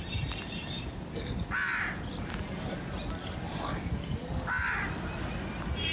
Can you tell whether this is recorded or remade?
recorded